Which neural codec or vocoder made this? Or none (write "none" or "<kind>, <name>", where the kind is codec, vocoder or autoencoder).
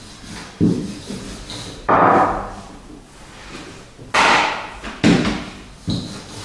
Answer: none